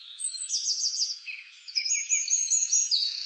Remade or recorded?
remade